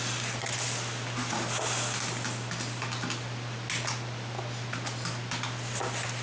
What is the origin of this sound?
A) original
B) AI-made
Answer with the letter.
A